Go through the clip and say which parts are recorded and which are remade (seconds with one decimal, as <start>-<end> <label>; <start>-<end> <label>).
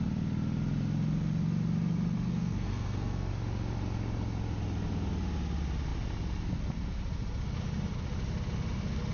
0.0-2.3 recorded; 2.3-3.3 remade; 3.3-9.1 recorded